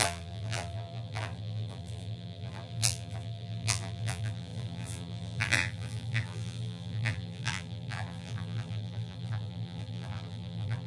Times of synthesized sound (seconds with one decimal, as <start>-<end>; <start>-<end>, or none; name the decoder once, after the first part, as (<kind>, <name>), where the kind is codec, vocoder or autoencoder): 0.0-10.9 (vocoder, BigVGAN v2)